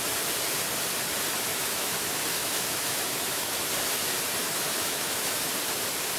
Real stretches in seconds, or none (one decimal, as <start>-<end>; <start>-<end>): 0.0-1.5; 3.7-4.4; 5.5-6.2